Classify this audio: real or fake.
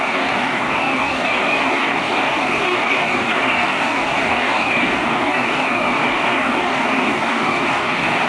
fake